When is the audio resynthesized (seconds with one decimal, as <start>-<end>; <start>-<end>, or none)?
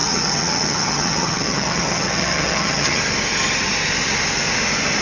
0.0-3.0